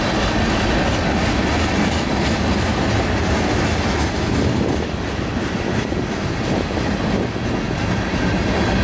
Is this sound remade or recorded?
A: recorded